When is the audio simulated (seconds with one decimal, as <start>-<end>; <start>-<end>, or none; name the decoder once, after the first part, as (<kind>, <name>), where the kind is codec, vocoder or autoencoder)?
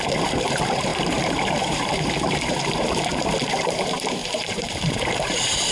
0.0-5.7 (vocoder, BigVGAN v2)